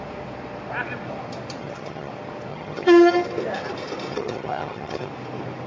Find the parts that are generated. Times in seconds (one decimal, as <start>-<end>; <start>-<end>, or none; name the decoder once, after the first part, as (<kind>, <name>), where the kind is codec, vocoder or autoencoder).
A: 1.6-2.1 (vocoder, HiFi-GAN); 2.5-3.1; 4.1-5.1